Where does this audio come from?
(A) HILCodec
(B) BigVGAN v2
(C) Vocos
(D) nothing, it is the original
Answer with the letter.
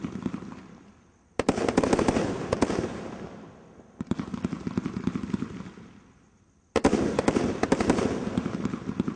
D